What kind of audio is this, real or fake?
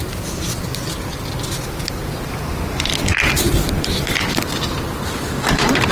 real